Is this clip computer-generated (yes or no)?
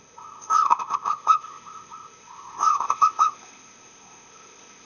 yes